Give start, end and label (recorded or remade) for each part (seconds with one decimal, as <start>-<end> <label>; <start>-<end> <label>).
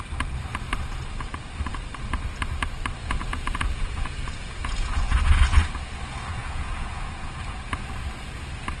0.0-3.0 recorded; 3.0-5.7 remade; 5.7-6.3 recorded; 6.3-7.7 remade; 7.7-8.8 recorded